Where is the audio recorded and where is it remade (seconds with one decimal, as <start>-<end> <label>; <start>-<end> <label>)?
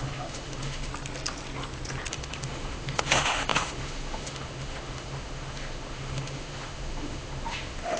0.0-0.9 remade; 0.9-2.1 recorded; 2.1-8.0 remade